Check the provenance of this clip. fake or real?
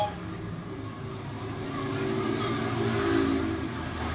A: real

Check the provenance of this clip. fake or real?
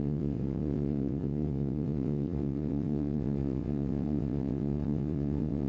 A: fake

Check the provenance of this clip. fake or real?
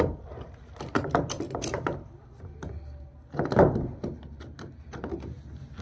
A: real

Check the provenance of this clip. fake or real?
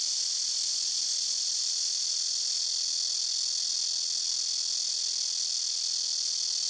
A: real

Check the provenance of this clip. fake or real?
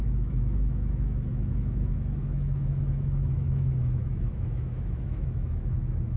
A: fake